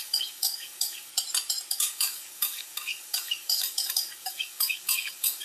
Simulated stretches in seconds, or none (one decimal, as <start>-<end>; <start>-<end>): 0.0-1.1; 1.7-5.4

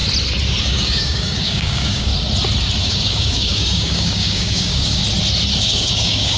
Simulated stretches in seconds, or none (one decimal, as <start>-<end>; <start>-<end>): 0.6-2.1; 2.8-5.0; 5.6-6.4

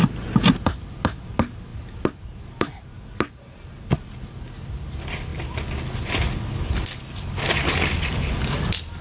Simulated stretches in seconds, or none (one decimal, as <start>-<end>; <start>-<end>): none

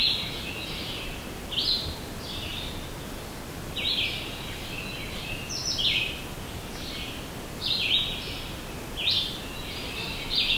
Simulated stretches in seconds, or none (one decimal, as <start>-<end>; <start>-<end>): none

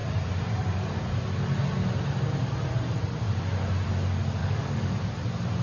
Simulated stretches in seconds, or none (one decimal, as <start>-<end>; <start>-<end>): 4.4-4.9

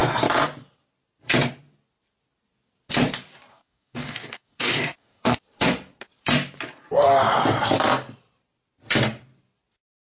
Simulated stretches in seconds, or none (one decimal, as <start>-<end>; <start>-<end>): 3.5-5.4

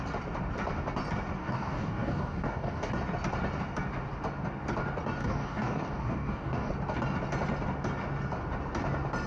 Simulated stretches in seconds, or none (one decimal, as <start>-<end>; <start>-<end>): 1.4-2.9; 5.2-6.7

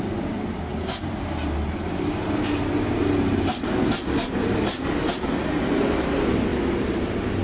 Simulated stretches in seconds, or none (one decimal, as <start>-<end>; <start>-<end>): none